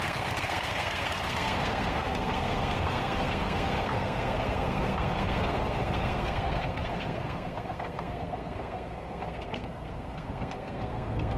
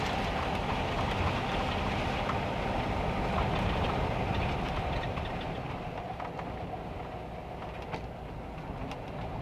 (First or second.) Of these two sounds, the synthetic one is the first